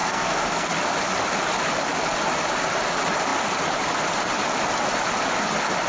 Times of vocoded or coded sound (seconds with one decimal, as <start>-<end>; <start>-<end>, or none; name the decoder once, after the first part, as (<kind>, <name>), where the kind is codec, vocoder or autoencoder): 0.0-0.7 (codec, SNAC)